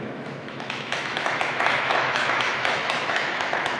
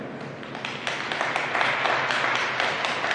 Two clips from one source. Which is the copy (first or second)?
first